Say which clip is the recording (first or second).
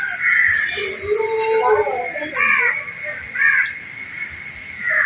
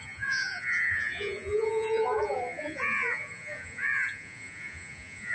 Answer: first